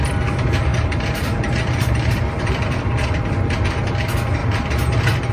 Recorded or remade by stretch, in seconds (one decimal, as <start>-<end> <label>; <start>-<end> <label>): 0.0-0.7 recorded; 0.7-3.9 remade; 3.9-4.4 recorded; 4.4-5.3 remade